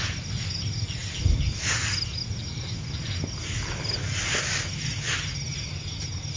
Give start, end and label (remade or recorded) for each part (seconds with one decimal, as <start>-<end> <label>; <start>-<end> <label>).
0.0-6.4 recorded